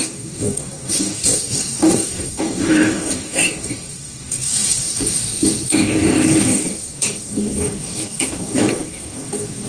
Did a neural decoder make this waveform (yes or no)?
yes